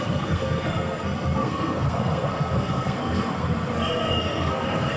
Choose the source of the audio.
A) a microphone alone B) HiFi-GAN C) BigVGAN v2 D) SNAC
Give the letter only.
D